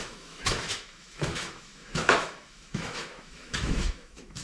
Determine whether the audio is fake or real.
fake